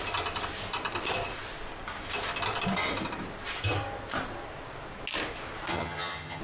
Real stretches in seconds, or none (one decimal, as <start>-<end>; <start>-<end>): 0.0-5.7